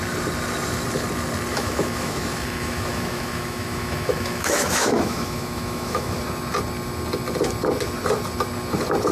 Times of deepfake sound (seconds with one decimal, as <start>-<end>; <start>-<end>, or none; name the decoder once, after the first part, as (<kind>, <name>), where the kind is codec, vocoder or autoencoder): 1.5-6.2 (autoencoder, DAC-VAE)